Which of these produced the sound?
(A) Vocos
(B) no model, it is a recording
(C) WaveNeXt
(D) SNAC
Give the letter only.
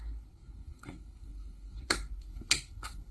D